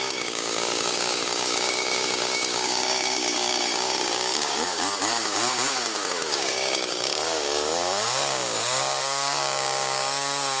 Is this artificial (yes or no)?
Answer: yes